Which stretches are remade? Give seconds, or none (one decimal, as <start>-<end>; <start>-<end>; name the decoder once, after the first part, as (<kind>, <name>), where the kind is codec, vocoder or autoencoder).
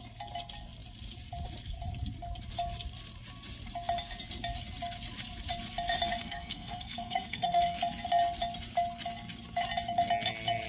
6.1-7.8 (codec, SNAC)